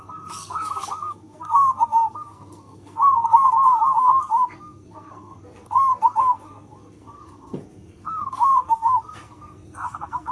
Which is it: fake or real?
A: fake